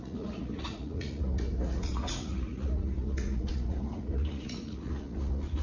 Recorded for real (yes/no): no